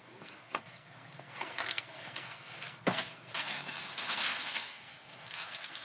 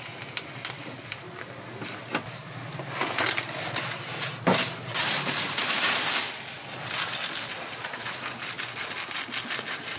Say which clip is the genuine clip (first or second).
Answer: second